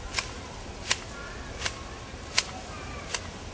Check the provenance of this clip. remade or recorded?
recorded